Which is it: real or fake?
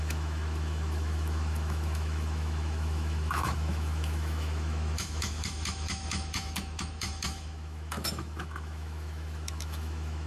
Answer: fake